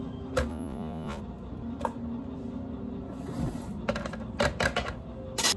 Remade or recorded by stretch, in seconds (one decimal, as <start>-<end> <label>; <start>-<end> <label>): 0.0-0.5 recorded; 0.5-1.2 remade; 1.2-5.6 recorded